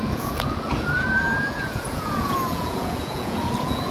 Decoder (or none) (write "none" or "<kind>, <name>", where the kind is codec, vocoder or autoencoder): vocoder, Vocos